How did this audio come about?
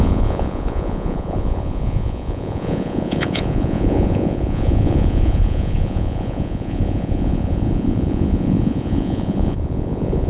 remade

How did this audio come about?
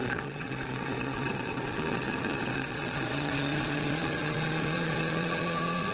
remade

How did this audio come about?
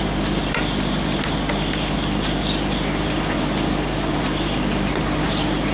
recorded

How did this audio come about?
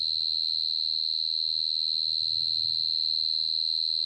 recorded